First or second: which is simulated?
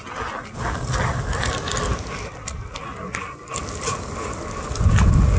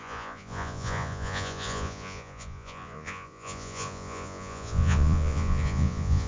second